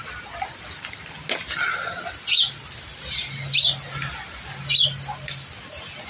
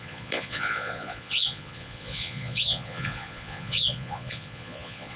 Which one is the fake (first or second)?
second